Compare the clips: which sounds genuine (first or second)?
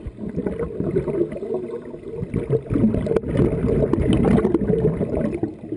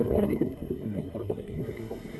first